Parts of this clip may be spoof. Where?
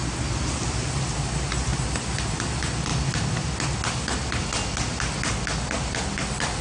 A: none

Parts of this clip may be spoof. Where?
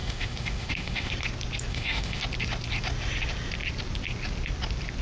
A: 0.0-1.1 (autoencoder, DAC-VAE); 1.7-2.2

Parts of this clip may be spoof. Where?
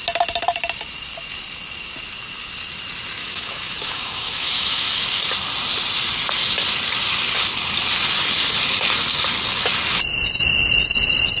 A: 3.2-5.0 (autoencoder, DAC-VAE)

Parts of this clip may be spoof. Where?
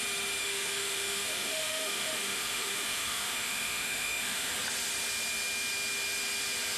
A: 0.4-4.5 (autoencoder, DAC-VAE)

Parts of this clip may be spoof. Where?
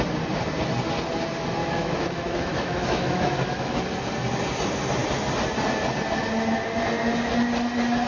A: 1.6-3.8 (autoencoder, DAC-VAE)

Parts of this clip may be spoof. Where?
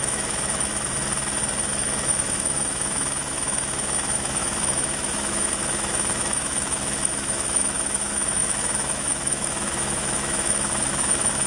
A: 0.0-0.7 (autoencoder, DAC-VAE); 1.7-11.5